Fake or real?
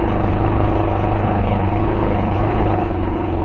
fake